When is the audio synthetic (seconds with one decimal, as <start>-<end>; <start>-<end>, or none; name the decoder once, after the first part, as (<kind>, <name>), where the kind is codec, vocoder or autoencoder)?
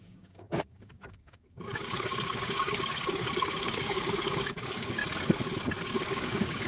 0.0-5.0 (codec, DAC); 5.8-6.7